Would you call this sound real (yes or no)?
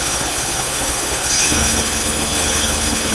no